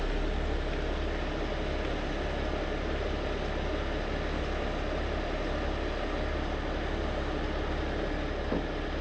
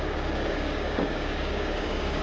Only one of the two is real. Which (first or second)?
first